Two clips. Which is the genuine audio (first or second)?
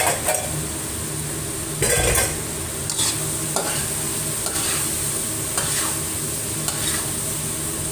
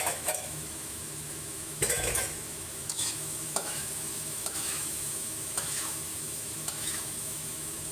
first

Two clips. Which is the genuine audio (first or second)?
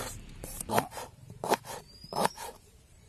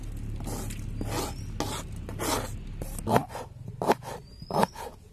second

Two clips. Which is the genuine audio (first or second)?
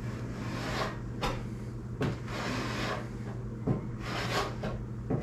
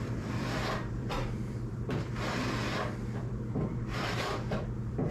first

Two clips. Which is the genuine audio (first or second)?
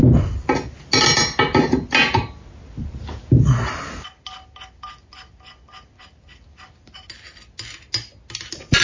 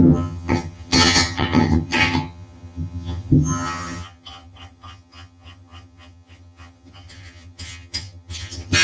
first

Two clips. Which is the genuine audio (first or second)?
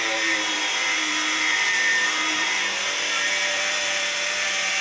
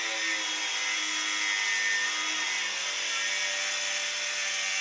second